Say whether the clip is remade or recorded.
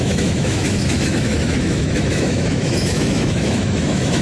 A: remade